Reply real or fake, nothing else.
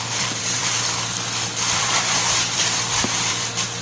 fake